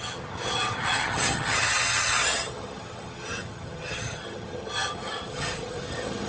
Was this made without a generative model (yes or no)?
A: no